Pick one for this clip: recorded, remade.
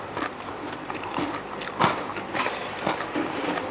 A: remade